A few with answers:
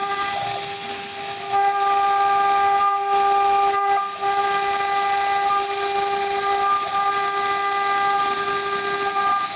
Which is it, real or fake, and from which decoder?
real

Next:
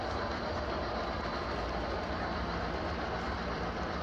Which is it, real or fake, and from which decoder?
fake, vocoder, BigVGAN v2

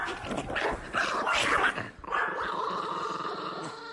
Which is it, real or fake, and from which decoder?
real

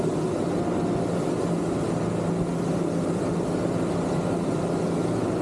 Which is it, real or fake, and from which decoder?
real